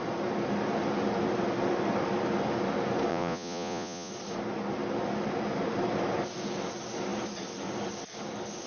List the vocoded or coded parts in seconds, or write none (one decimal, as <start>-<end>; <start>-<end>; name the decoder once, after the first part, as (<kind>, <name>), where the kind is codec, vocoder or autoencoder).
3.1-4.1 (vocoder, Vocos)